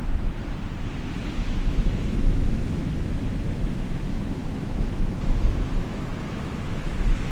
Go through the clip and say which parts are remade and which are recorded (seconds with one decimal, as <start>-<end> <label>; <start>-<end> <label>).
0.0-1.2 recorded; 1.2-7.3 remade